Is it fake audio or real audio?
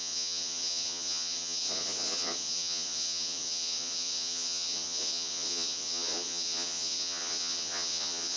fake